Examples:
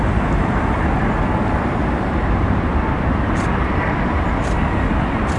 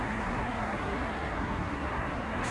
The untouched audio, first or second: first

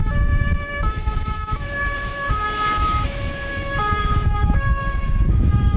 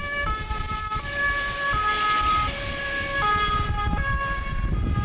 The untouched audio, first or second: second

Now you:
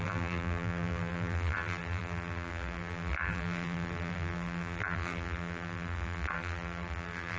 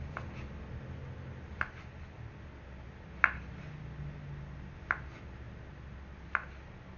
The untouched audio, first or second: second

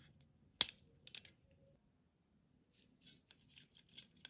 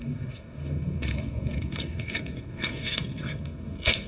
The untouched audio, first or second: first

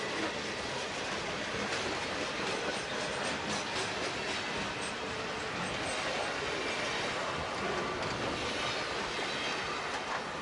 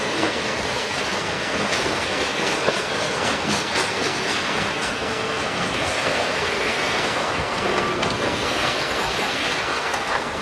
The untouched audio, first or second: first